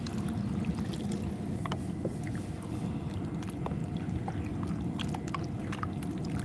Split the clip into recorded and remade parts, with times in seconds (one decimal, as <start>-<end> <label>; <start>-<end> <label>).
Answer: 0.0-6.4 recorded